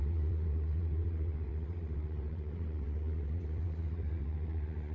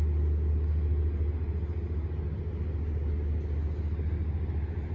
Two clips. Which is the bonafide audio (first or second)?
second